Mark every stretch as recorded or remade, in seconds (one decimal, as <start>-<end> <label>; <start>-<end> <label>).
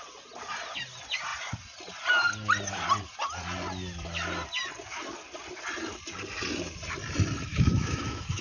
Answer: 0.0-7.5 recorded; 7.5-8.4 remade